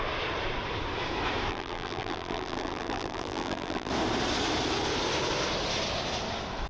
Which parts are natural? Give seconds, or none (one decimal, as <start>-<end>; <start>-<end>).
0.0-1.5; 3.9-6.7